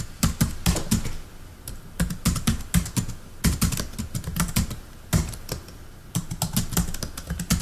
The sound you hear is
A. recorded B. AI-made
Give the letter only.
A